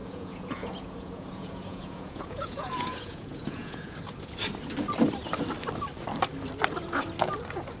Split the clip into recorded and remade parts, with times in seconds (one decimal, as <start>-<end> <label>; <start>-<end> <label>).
0.0-4.3 remade; 4.3-7.8 recorded